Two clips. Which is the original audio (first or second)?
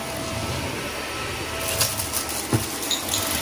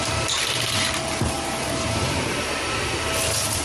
first